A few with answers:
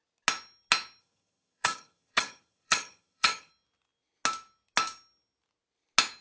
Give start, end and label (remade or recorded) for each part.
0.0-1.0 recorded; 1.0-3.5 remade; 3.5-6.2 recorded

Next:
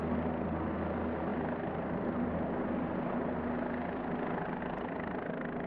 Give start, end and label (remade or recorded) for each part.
0.0-5.7 recorded

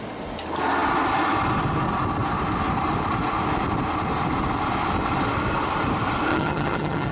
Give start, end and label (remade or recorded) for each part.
0.0-6.3 recorded; 6.3-7.1 remade